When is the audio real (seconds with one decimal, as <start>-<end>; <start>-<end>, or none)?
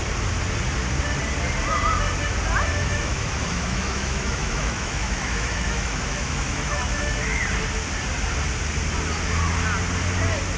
0.0-2.7; 7.4-10.6